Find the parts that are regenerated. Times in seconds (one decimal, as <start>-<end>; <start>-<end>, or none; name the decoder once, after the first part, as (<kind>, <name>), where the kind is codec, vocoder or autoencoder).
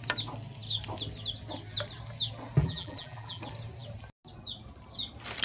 2.6-3.4 (vocoder, BigVGAN v2)